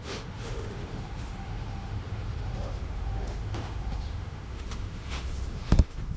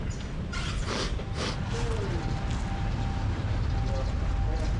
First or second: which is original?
second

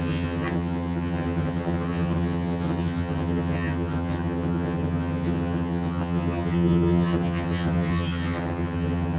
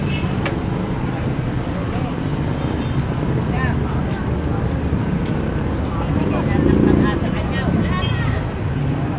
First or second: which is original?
second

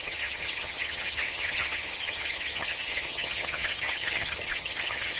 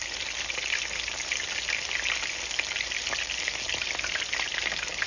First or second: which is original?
second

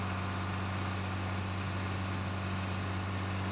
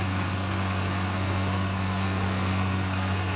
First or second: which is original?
first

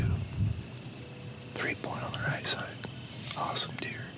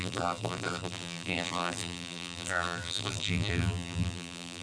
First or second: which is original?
first